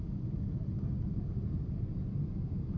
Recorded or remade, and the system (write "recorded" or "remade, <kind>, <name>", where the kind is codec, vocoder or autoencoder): recorded